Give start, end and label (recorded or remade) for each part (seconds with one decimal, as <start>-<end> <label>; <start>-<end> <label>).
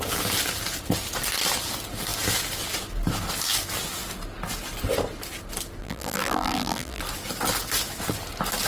0.0-5.8 recorded; 5.8-7.0 remade; 7.0-8.7 recorded